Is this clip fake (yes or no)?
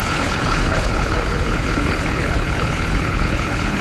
yes